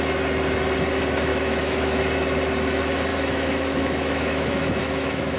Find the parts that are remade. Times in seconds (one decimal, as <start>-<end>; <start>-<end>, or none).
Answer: 1.3-2.0; 3.1-5.4

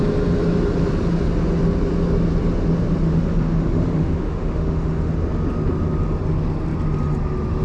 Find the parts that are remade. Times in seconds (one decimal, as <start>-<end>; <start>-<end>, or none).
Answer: 3.1-5.1

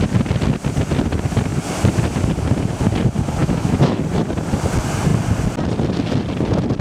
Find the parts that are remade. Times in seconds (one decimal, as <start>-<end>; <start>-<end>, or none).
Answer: 3.4-4.0

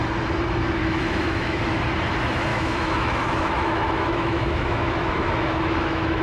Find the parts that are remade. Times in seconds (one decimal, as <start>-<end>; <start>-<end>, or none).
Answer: 0.8-1.6; 2.5-6.2

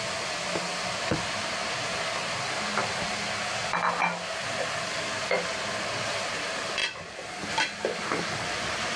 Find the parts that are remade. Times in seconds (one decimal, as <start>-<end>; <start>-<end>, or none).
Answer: none

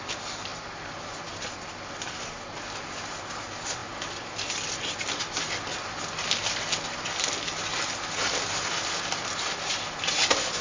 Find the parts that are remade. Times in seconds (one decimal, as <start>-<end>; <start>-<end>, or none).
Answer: none